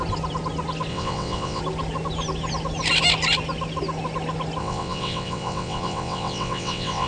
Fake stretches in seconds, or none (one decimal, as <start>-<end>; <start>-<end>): 0.9-1.6; 4.6-7.1